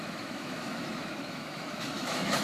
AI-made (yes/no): yes